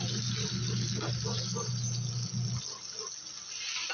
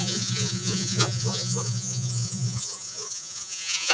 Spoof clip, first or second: second